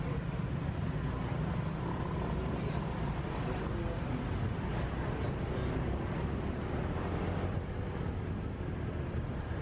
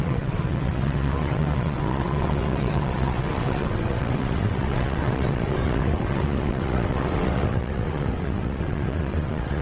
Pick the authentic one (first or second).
first